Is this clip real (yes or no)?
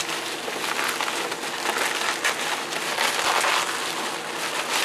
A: yes